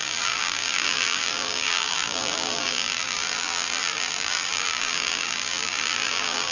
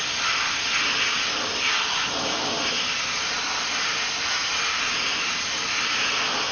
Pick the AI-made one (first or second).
first